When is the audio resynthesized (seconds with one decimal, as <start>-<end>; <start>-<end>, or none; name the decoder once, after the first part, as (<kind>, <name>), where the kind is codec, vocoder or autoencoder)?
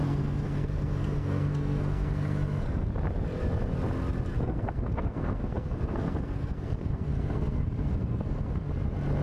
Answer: 0.0-2.9 (codec, SNAC); 4.3-8.7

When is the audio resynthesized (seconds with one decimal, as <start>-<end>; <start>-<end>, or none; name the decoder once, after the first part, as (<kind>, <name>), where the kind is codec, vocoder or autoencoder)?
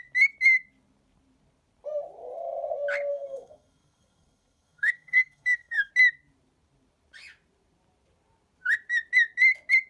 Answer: 3.1-5.9 (codec, SNAC)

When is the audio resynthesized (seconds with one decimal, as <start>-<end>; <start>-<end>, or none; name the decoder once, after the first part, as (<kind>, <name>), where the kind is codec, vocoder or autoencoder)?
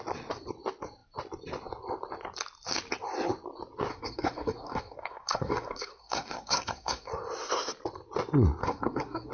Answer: 3.9-7.1 (codec, SNAC); 8.6-9.3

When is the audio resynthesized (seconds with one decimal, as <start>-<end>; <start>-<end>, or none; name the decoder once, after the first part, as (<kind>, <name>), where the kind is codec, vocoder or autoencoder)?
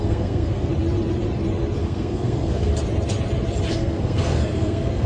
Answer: 0.0-0.7 (codec, SNAC); 1.8-2.7; 3.7-5.1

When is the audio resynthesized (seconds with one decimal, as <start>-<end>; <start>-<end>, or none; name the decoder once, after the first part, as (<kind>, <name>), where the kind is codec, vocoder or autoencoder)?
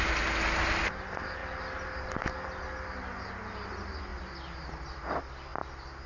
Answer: none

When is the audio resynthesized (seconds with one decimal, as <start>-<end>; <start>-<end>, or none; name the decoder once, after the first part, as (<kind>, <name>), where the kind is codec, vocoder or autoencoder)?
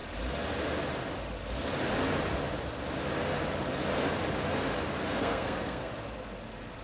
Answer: 5.2-5.9 (codec, SNAC)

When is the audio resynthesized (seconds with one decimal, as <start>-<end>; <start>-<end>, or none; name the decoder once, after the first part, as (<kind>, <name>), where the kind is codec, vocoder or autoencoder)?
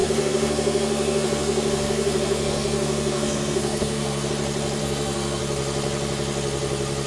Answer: 0.0-4.3 (codec, SNAC); 4.8-5.4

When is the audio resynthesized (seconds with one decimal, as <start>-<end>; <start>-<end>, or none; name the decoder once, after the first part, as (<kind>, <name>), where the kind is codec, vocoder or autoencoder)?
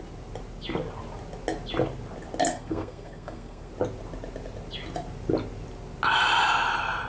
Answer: 2.5-3.7 (codec, SNAC)